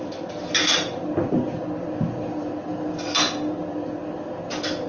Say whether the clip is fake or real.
real